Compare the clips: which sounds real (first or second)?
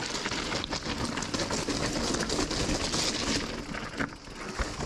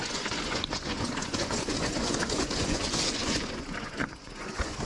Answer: first